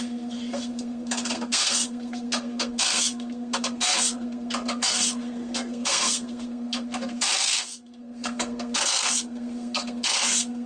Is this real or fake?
fake